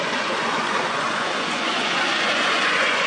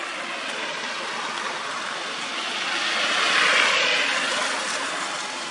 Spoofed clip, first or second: first